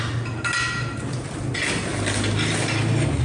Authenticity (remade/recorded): recorded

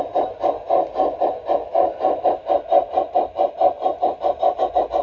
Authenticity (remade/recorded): recorded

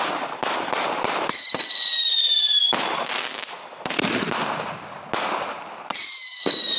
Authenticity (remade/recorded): recorded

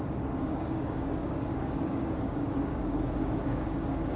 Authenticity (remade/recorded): remade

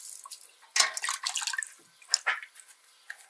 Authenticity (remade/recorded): recorded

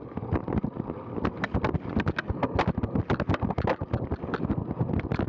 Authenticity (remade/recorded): recorded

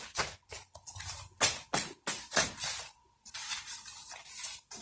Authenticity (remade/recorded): recorded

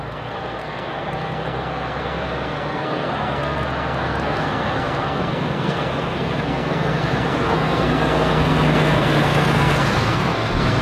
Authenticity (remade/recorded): remade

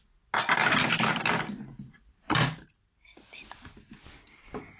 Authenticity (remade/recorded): recorded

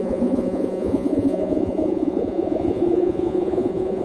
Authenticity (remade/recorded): remade